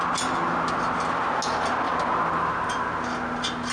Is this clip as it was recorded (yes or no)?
yes